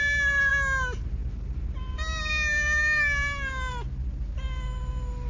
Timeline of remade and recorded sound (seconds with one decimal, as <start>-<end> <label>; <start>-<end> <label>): 0.0-5.3 recorded